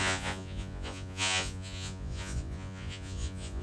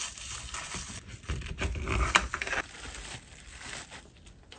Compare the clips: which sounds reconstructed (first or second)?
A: first